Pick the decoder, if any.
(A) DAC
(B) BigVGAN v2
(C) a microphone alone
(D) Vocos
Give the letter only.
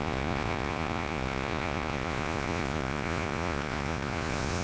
D